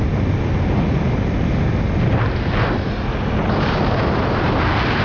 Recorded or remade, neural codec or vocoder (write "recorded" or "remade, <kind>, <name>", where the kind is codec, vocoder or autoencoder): recorded